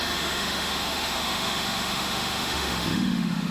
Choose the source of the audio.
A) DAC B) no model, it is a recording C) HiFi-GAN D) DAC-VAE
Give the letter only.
D